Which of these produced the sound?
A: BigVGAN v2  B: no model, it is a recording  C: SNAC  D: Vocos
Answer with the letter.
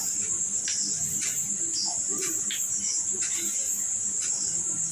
B